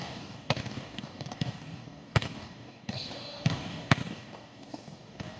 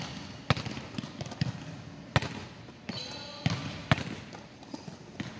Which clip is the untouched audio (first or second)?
second